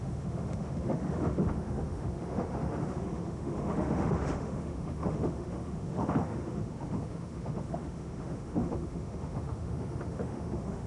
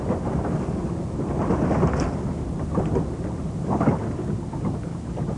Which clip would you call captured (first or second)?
second